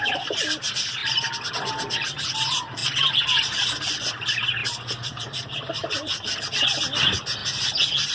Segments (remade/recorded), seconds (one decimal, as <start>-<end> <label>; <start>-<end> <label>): 0.0-4.6 recorded; 4.6-6.4 remade; 6.4-8.1 recorded